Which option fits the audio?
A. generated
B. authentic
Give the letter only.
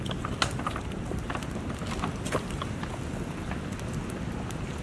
B